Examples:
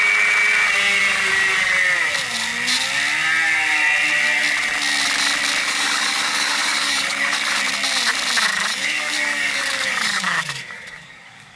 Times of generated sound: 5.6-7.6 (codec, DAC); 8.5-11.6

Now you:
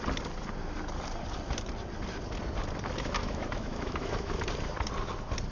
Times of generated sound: 3.2-4.4 (autoencoder, DAC-VAE)

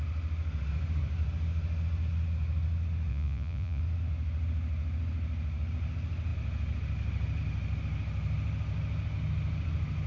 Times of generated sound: 3.1-3.8 (vocoder, Vocos)

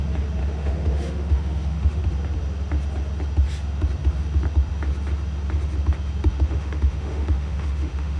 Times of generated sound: 0.4-2.0 (autoencoder, DAC-VAE); 6.3-8.2

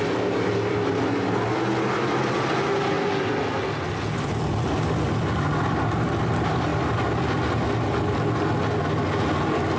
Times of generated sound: none

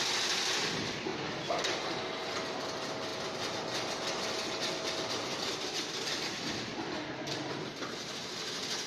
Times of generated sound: none